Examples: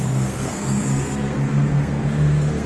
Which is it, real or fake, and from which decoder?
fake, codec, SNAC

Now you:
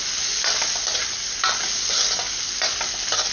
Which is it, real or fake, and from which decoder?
real